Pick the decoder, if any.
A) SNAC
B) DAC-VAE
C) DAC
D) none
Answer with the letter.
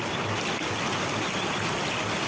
D